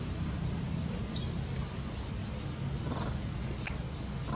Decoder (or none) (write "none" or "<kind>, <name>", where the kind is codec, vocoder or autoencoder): none